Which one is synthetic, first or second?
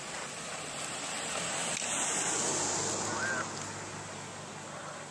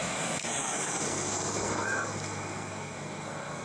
second